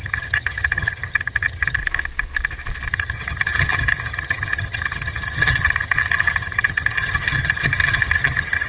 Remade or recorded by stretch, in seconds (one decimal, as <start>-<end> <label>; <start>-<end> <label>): 0.0-1.8 remade; 1.8-2.9 recorded; 2.9-8.7 remade